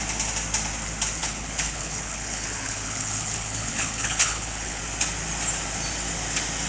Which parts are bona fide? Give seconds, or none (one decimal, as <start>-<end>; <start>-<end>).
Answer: 0.0-1.2; 4.8-6.7